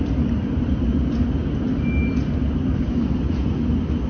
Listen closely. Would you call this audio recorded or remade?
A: recorded